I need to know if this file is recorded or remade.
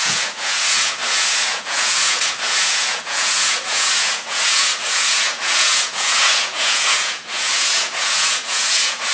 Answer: remade